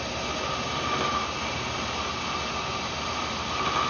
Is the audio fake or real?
real